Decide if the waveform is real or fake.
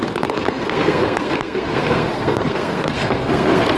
fake